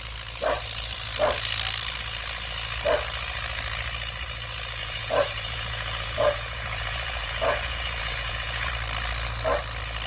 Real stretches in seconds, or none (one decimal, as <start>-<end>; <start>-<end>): 0.0-4.8; 8.7-10.1